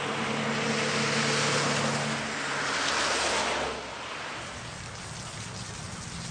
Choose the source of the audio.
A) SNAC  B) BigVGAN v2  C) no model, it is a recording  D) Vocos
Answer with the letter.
C